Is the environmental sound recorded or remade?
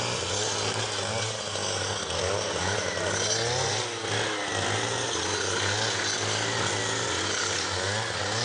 recorded